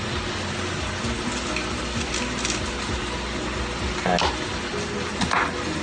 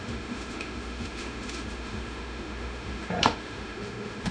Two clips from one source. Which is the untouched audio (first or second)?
first